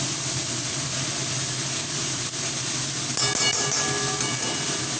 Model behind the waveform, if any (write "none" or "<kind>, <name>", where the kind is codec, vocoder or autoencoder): none